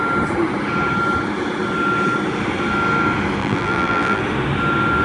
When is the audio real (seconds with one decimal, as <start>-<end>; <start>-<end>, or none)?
0.0-3.4; 4.2-5.0